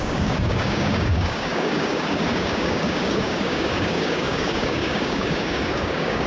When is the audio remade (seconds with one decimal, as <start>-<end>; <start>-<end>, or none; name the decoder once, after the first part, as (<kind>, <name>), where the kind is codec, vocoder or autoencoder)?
0.0-6.3 (codec, DAC)